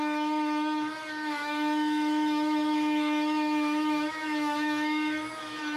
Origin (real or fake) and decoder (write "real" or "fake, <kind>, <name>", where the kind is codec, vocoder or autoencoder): fake, autoencoder, DAC-VAE